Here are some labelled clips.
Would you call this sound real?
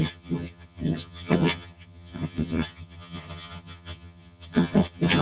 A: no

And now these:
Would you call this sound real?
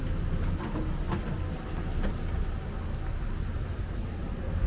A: yes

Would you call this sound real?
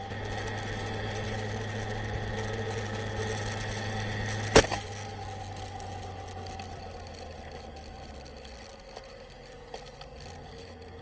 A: yes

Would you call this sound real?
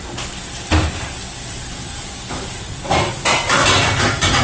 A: yes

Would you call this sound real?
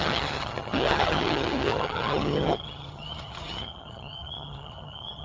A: no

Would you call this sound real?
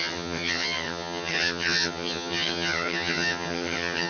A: no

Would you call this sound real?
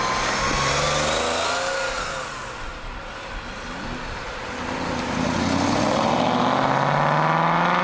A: yes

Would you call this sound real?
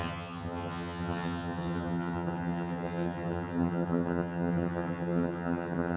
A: no